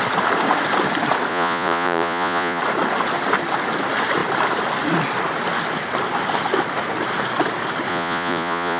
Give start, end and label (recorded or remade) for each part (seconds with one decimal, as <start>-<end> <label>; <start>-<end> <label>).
0.0-1.3 recorded; 1.3-2.6 remade; 2.6-7.9 recorded; 7.9-8.8 remade